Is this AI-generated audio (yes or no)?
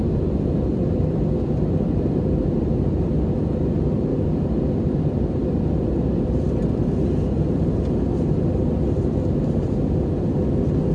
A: no